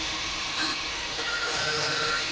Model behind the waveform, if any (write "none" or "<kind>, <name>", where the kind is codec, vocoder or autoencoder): autoencoder, DAC-VAE